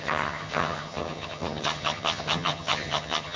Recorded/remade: remade